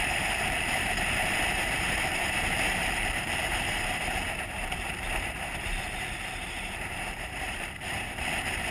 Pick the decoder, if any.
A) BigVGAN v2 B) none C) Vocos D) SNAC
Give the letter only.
A